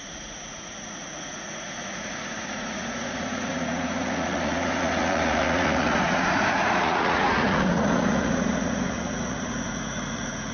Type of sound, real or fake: fake